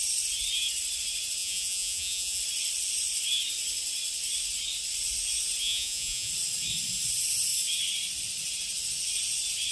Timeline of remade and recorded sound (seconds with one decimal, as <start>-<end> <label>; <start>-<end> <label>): 0.0-1.4 recorded; 1.4-2.4 remade; 2.4-5.6 recorded; 5.6-6.3 remade; 6.3-9.7 recorded